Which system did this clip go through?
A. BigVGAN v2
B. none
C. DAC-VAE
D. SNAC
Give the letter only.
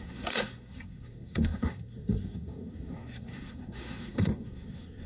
D